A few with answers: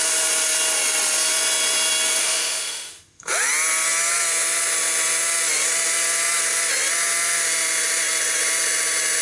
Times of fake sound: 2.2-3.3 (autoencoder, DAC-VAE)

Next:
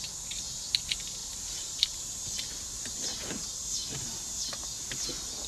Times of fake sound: 1.2-4.5 (vocoder, BigVGAN v2)

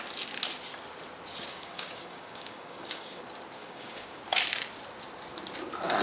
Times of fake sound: 1.5-3.2 (codec, DAC); 3.6-4.2